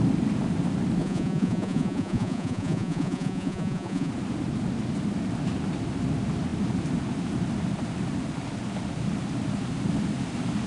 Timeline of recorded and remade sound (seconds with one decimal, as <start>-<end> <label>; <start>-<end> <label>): 0.0-1.0 recorded; 1.0-4.1 remade; 4.1-10.7 recorded